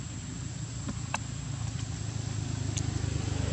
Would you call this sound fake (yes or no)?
no